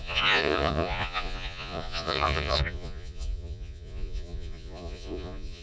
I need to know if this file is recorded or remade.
remade